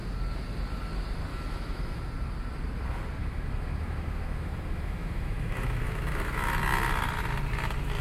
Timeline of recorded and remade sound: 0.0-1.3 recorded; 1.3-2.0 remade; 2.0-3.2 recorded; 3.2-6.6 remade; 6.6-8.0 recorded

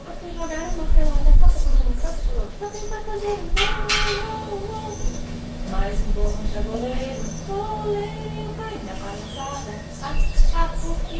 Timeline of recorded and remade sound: 0.0-7.7 remade; 7.7-8.7 recorded; 8.7-11.2 remade

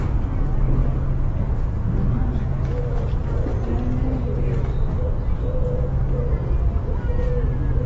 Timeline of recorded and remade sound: 0.0-2.4 recorded; 2.4-3.0 remade; 3.0-7.9 recorded

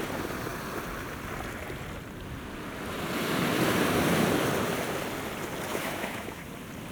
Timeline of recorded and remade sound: 0.0-5.7 recorded; 5.7-6.4 remade; 6.4-6.9 recorded

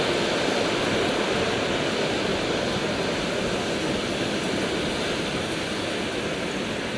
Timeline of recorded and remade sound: 0.0-7.0 recorded

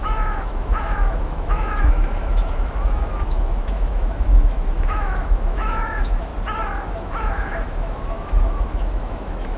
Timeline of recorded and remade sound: 0.0-6.3 remade; 6.3-6.9 recorded; 6.9-9.6 remade

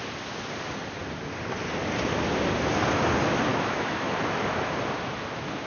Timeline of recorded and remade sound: 0.0-3.5 recorded; 3.5-4.1 remade; 4.1-5.7 recorded

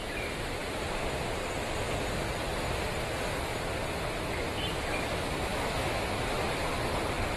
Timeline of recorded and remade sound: 0.0-5.5 recorded; 5.5-6.5 remade; 6.5-7.4 recorded